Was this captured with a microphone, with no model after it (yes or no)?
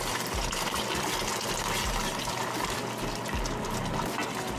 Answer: yes